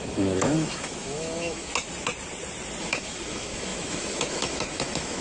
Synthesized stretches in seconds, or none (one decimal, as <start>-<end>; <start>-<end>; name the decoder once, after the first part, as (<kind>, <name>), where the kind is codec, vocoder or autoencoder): 0.0-1.7 (autoencoder, DAC-VAE); 2.8-5.2